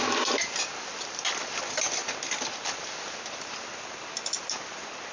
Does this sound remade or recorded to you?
recorded